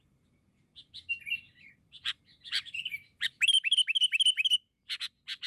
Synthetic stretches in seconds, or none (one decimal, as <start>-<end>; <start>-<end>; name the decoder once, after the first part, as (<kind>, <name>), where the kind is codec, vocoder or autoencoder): 2.9-3.8 (vocoder, BigVGAN v2)

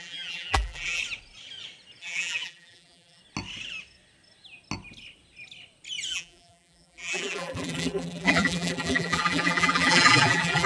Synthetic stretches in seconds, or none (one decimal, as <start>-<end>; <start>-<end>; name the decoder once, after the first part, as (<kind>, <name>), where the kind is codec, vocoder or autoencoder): 0.0-1.0 (vocoder, BigVGAN v2); 2.0-3.2; 6.1-10.7

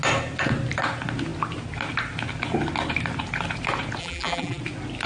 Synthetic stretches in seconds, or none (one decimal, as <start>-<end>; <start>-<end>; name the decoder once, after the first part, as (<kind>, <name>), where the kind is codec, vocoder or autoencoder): 4.0-4.6 (vocoder, BigVGAN v2)

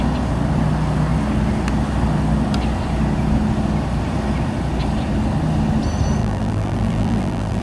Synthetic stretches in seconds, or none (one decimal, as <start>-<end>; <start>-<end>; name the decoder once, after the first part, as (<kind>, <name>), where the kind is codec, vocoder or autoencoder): 6.2-7.6 (vocoder, BigVGAN v2)